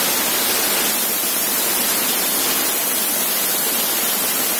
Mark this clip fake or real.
real